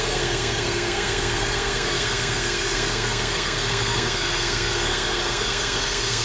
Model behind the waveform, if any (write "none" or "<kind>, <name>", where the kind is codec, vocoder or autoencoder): codec, SNAC